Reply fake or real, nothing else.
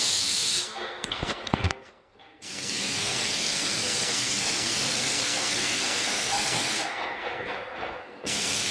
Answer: fake